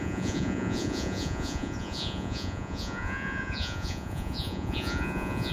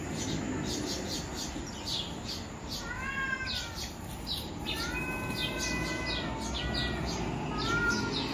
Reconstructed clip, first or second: first